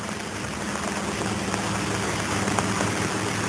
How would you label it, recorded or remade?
recorded